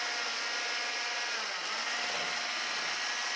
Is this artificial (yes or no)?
no